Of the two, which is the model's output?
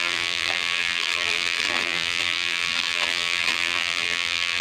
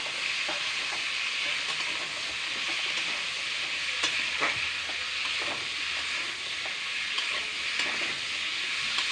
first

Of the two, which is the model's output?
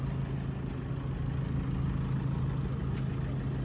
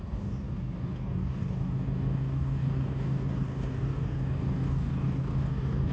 second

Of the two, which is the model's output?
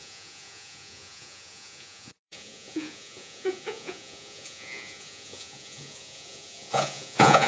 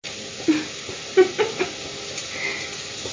first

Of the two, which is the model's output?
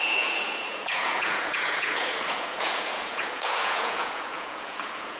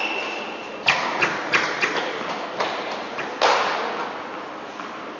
first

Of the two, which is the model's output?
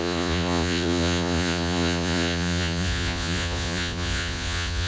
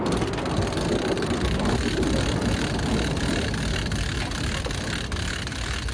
first